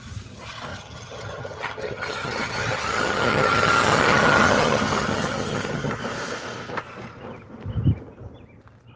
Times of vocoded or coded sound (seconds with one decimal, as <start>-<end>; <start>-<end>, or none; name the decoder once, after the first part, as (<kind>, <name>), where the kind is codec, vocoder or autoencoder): 0.7-5.9 (vocoder, HiFi-GAN)